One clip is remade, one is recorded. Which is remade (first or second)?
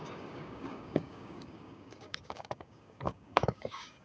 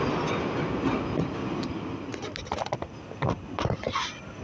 first